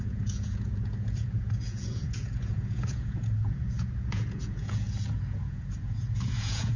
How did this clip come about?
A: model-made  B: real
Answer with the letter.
A